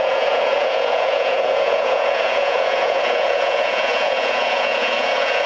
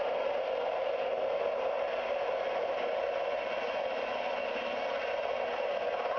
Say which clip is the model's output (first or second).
first